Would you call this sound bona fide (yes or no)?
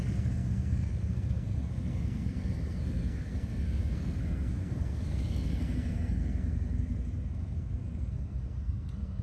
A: no